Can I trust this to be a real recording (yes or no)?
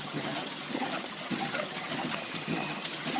no